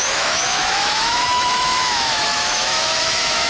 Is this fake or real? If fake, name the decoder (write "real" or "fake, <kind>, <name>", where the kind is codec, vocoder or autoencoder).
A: fake, autoencoder, DAC-VAE